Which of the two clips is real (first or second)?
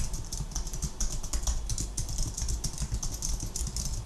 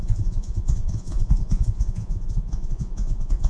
first